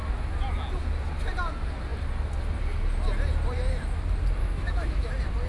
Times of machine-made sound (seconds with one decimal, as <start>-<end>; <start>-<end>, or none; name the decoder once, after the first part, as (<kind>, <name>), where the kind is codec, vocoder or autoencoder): 4.4-5.1 (autoencoder, DAC-VAE)

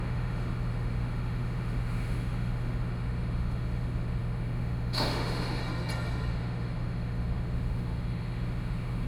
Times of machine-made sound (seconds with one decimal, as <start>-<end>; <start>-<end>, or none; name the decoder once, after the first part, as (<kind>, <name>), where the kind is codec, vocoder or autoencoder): 0.0-5.6 (autoencoder, DAC-VAE); 6.3-9.1

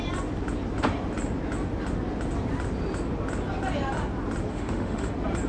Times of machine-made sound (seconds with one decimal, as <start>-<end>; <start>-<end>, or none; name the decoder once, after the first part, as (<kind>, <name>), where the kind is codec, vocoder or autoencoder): 4.5-5.1 (autoencoder, DAC-VAE)